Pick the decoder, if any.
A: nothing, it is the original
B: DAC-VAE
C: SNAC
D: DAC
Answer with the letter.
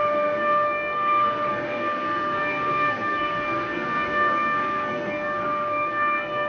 C